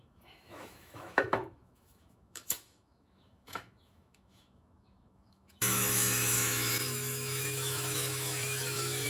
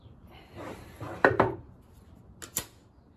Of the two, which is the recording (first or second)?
second